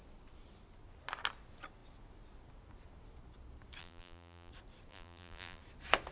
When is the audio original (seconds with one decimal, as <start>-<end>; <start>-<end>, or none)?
0.0-3.8; 4.5-4.9; 5.6-6.1